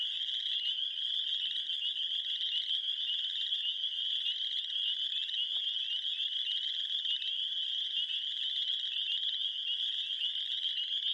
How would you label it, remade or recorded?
recorded